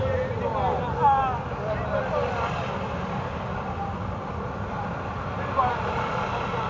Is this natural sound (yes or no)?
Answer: yes